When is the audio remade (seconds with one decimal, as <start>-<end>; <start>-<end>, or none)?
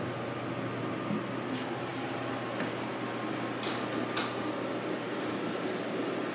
none